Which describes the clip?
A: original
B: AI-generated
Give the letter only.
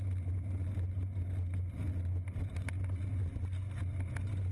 A